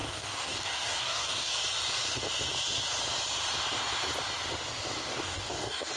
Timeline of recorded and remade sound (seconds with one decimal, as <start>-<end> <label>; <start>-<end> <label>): 0.0-1.5 remade; 1.5-5.1 recorded; 5.1-6.0 remade